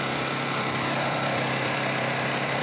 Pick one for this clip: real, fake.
fake